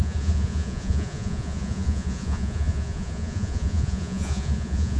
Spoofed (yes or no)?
yes